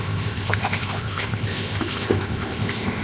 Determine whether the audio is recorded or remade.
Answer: remade